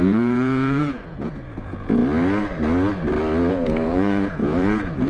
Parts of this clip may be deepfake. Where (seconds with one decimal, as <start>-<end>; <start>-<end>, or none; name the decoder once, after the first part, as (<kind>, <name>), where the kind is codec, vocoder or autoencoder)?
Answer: 0.0-2.0 (vocoder, Vocos); 3.5-5.1